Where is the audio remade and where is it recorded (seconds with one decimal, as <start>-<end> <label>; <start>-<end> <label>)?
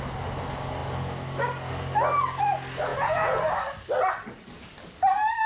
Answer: 0.0-2.9 recorded; 2.9-3.4 remade; 3.4-5.5 recorded